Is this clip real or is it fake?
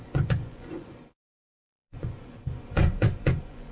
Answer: fake